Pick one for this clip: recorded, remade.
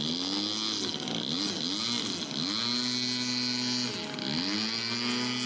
recorded